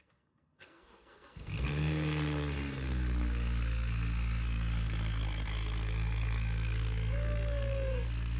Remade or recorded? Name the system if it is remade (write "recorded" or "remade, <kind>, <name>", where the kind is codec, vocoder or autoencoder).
remade, codec, SNAC